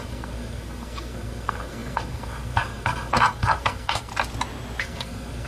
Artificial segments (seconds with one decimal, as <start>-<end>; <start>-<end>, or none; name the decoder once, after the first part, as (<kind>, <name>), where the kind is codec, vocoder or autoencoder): 0.0-4.1 (codec, SNAC); 4.8-5.5